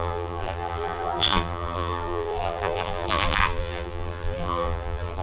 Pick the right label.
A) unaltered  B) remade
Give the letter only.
B